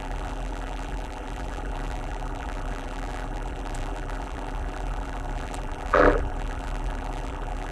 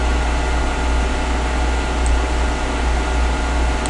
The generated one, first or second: first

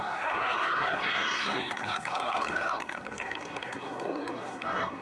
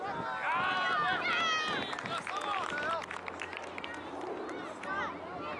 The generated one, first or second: first